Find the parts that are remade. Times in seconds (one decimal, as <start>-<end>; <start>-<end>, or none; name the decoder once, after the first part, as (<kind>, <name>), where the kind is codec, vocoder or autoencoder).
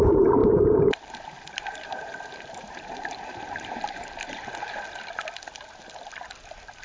0.4-4.5 (vocoder, BigVGAN v2)